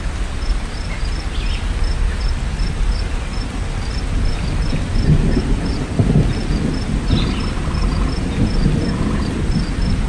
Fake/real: real